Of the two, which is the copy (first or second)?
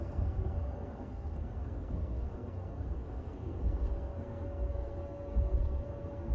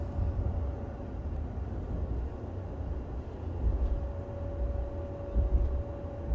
first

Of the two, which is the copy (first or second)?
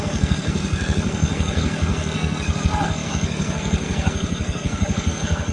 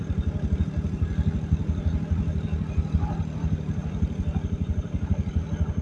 first